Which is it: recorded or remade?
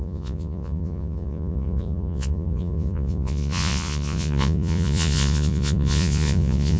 remade